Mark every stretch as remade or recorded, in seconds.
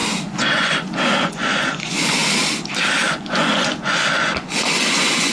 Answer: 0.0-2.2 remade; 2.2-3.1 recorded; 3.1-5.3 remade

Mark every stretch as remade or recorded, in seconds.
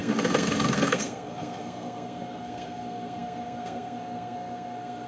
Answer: 0.0-5.1 remade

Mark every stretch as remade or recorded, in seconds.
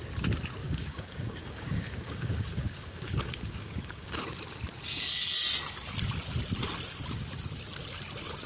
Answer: 0.0-0.6 recorded; 0.6-4.2 remade; 4.2-8.5 recorded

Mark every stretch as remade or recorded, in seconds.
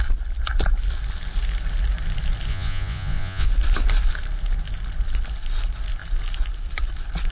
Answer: 0.0-2.5 recorded; 2.5-3.5 remade; 3.5-7.3 recorded